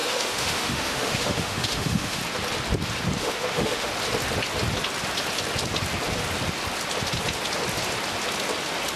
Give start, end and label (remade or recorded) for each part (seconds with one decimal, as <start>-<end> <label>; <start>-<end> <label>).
0.0-2.2 remade; 2.2-3.2 recorded; 3.2-3.9 remade; 3.9-9.0 recorded